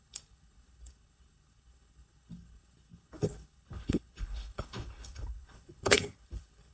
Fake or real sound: fake